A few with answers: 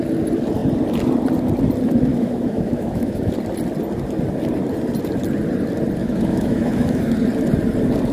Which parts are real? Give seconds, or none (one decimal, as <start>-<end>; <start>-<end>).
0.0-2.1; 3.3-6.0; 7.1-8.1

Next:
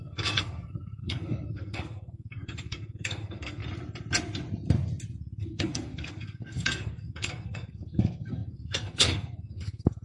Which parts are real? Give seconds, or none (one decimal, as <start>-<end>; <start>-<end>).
3.6-5.4

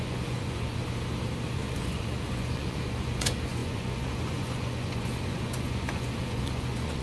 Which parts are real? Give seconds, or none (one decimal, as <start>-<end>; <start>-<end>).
0.8-1.5

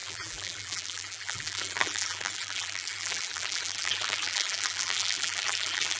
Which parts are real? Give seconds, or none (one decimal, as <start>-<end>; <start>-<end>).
none

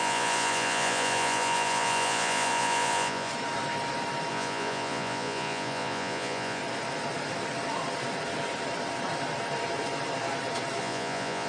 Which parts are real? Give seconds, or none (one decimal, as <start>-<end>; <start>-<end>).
3.3-4.3; 6.6-10.8

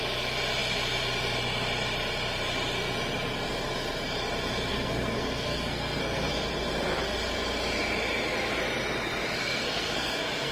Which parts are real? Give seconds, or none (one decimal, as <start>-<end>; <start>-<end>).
0.0-4.7; 6.3-9.4